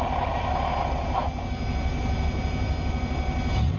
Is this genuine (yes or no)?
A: yes